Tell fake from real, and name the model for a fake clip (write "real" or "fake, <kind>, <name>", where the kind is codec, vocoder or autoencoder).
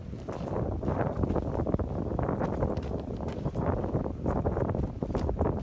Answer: real